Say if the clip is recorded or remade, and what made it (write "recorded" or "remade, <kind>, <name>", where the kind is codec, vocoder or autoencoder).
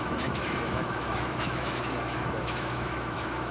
remade, autoencoder, DAC-VAE